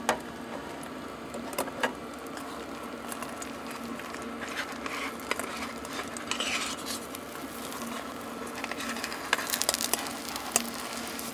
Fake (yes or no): no